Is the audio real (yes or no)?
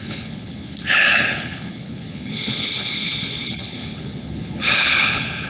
no